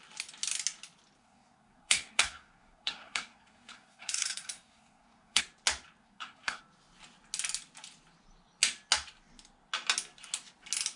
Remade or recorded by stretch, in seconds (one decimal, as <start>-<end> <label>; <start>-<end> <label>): 0.0-1.2 recorded; 1.2-5.4 remade; 5.4-6.0 recorded; 6.0-6.6 remade; 6.6-11.0 recorded